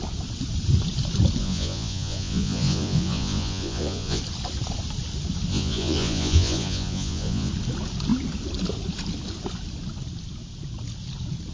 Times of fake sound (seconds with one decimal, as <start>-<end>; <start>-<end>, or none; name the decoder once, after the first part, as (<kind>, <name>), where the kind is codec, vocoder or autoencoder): 1.4-4.2 (vocoder, Vocos); 5.5-7.5